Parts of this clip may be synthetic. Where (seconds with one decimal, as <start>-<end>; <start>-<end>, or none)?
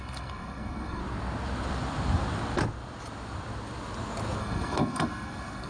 0.0-1.0; 4.4-5.7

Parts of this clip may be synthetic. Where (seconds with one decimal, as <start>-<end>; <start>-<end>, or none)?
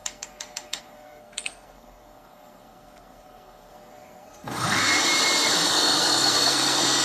0.0-4.8; 5.7-7.0